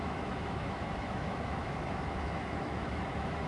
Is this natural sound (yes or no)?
no